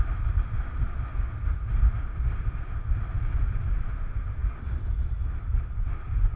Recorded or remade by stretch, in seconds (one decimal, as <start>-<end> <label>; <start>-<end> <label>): 0.0-6.4 recorded